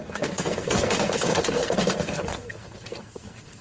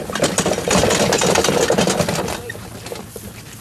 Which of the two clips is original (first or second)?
second